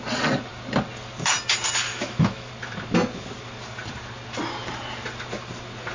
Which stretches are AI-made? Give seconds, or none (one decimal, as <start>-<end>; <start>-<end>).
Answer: 1.9-2.5